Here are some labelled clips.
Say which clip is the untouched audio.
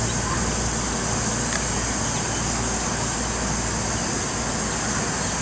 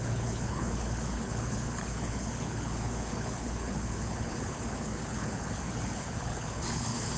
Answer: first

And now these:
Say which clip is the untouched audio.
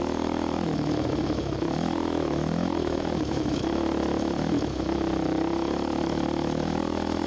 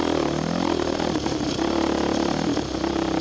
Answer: second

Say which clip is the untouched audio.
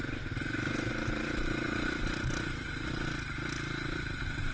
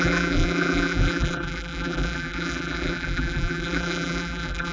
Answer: first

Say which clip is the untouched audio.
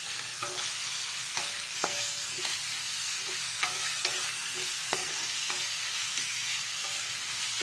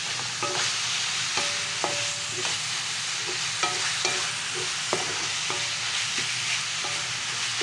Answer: second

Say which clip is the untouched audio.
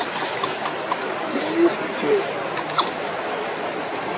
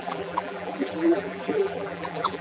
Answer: first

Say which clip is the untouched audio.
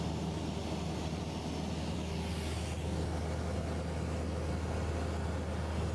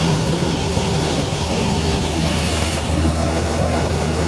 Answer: first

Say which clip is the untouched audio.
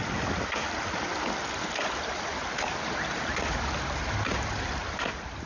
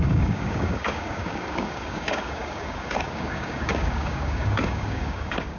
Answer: first